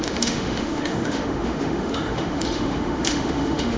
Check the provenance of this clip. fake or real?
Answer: fake